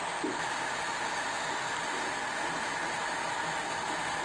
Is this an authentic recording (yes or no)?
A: yes